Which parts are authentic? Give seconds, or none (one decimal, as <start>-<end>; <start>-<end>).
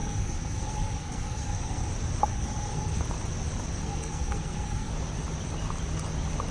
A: 1.9-2.3; 3.0-3.8; 4.9-6.5